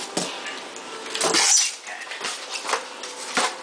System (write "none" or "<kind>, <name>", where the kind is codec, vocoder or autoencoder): none